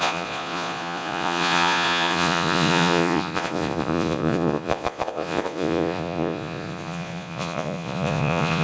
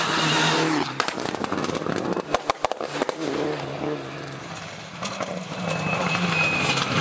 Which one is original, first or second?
second